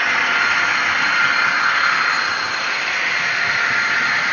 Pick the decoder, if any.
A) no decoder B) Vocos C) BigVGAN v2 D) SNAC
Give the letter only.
A